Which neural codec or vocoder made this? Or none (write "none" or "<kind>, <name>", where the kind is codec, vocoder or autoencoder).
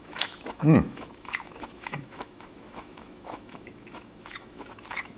autoencoder, DAC-VAE